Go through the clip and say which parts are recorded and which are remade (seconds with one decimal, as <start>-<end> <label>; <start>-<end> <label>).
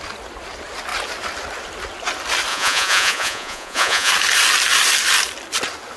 0.0-2.5 recorded; 2.5-4.1 remade; 4.1-6.0 recorded